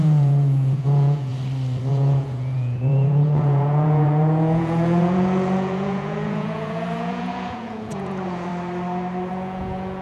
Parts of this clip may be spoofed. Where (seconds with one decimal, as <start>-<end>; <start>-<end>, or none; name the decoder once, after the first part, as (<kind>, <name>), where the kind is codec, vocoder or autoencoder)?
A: 0.0-1.3 (vocoder, Vocos); 1.9-8.5; 9.3-10.0